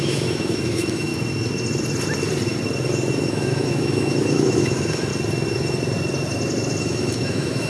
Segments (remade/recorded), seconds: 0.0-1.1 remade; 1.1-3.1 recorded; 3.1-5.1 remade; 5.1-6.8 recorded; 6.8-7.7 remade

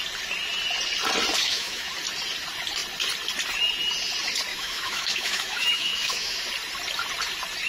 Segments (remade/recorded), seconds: 0.0-1.4 recorded; 1.4-1.9 remade; 1.9-4.5 recorded; 4.5-6.4 remade; 6.4-7.7 recorded

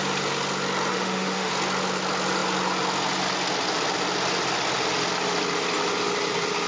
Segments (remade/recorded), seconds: 0.0-0.9 recorded; 0.9-1.5 remade; 1.5-6.7 recorded

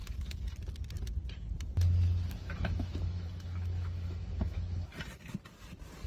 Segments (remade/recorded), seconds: 0.0-2.3 recorded; 2.3-4.9 remade; 4.9-6.1 recorded

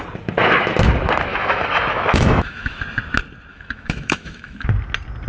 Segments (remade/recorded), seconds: 0.0-1.3 recorded; 1.3-2.8 remade; 2.8-3.5 recorded; 3.5-4.7 remade; 4.7-5.3 recorded

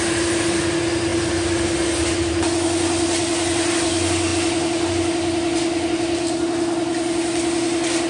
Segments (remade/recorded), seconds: 0.0-8.1 recorded

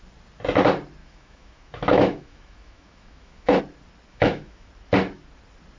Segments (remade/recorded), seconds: 0.0-1.0 recorded; 1.0-3.6 remade; 3.6-4.1 recorded; 4.1-4.7 remade; 4.7-5.8 recorded